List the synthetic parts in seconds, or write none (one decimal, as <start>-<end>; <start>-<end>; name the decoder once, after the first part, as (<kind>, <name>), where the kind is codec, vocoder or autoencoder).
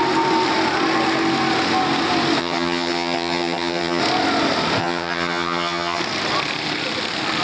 2.4-4.0 (vocoder, HiFi-GAN); 4.8-6.0